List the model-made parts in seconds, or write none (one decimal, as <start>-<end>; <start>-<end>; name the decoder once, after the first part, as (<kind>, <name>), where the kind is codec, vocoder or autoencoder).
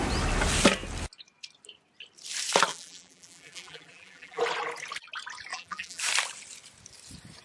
2.7-4.4 (vocoder, BigVGAN v2); 5.5-6.0